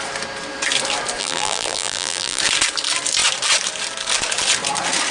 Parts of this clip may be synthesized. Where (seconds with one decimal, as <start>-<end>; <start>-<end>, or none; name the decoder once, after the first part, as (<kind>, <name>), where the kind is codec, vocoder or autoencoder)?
1.2-2.4 (vocoder, BigVGAN v2)